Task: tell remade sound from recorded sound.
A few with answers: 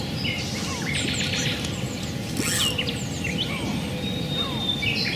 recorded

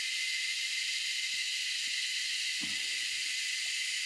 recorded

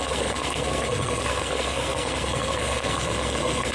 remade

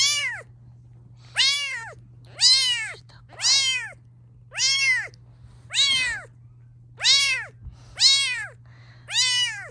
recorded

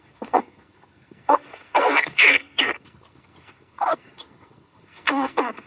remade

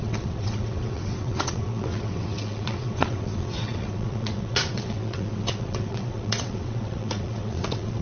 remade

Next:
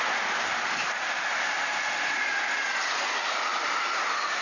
recorded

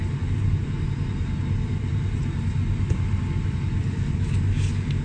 recorded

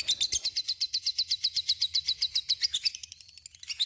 recorded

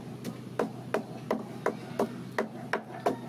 recorded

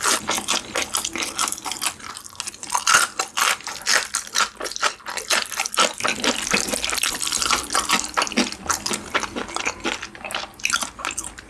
recorded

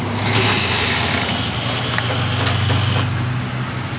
recorded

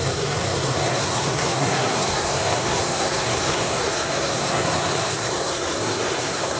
remade